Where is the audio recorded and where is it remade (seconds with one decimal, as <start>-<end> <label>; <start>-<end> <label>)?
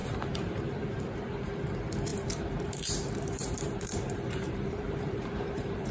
0.0-0.6 remade; 0.6-2.1 recorded; 2.1-5.9 remade